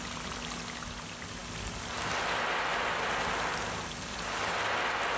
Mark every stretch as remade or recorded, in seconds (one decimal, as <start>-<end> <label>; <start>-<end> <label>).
0.0-5.2 recorded